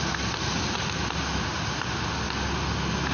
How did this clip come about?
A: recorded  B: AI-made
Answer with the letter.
A